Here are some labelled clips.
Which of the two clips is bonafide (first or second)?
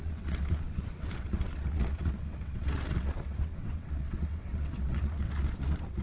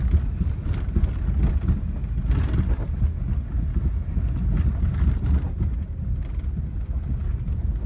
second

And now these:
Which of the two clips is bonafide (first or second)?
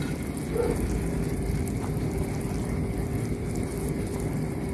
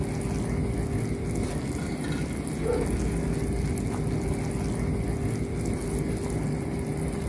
second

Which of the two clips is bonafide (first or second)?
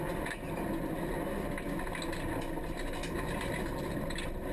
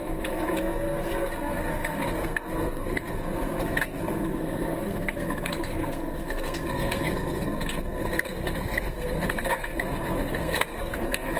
first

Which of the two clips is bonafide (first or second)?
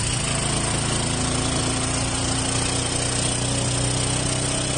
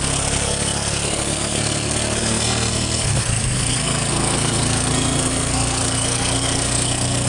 first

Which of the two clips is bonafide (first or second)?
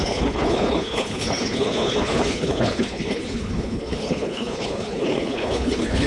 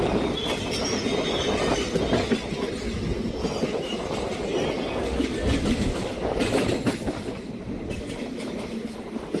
second